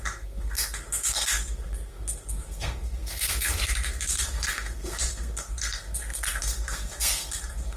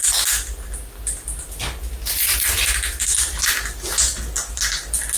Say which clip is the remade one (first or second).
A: first